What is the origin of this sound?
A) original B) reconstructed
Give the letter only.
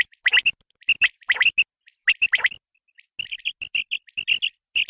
A